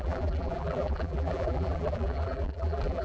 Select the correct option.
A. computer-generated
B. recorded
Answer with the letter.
A